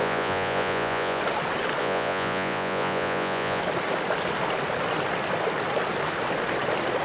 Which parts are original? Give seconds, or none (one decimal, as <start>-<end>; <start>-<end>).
1.2-1.8; 3.6-7.0